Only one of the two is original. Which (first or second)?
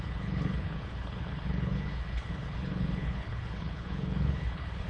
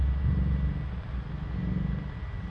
second